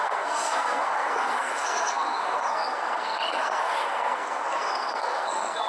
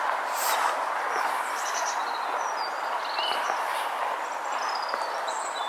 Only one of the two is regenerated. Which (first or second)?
first